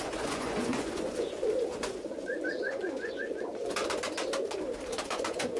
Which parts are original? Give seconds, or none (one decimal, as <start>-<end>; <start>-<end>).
3.8-5.0